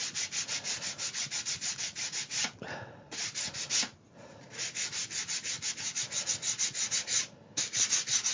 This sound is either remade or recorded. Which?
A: recorded